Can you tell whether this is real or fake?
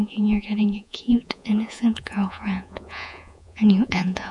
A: fake